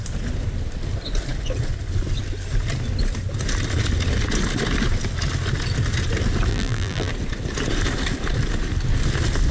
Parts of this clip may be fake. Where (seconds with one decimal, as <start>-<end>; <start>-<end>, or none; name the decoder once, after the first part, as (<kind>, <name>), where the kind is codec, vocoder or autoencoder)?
6.5-7.1 (vocoder, BigVGAN v2)